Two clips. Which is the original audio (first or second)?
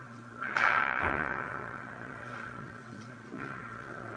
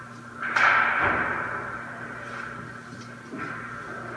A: second